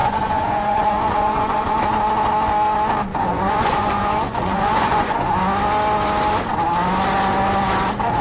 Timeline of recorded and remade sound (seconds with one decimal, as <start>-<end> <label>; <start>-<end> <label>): 0.0-1.9 remade; 1.9-3.1 recorded; 3.1-5.4 remade; 5.4-8.2 recorded